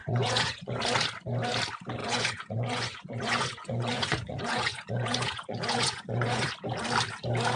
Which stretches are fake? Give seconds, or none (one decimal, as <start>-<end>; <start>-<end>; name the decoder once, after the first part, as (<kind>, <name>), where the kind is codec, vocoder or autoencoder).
0.0-0.8 (vocoder, Vocos); 2.0-6.5